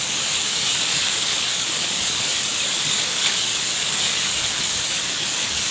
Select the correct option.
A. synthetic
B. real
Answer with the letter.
A